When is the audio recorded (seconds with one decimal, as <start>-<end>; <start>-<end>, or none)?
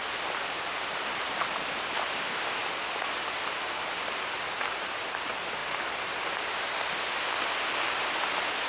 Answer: 2.6-3.4; 5.6-8.7